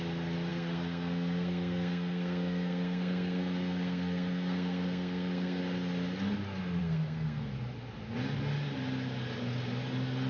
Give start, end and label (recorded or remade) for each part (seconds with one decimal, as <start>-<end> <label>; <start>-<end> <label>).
0.0-0.5 recorded; 0.5-5.6 remade; 5.6-6.8 recorded; 6.8-7.5 remade; 7.5-10.3 recorded